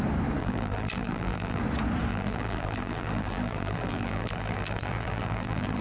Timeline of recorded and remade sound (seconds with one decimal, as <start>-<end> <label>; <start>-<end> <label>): 0.0-0.4 recorded; 0.4-1.6 remade; 1.6-2.1 recorded; 2.1-5.8 remade